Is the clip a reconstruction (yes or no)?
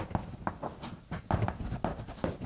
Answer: no